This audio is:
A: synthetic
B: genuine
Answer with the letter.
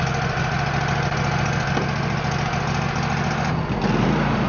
B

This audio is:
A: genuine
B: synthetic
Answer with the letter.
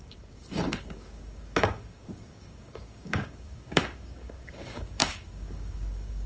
B